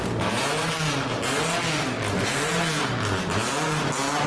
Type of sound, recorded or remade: recorded